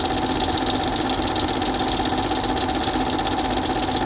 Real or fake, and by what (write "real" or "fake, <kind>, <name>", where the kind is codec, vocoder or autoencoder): real